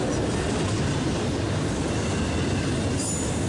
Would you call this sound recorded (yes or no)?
yes